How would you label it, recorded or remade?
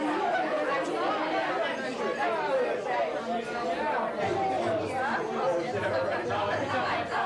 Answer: recorded